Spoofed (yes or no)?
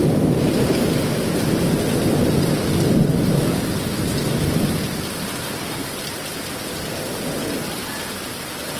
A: no